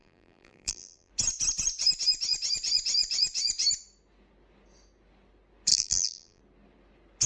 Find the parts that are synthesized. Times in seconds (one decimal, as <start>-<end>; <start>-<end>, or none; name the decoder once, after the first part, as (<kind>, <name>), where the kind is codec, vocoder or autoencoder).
0.0-1.1 (vocoder, BigVGAN v2); 5.7-6.4